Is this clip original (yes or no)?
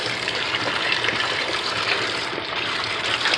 no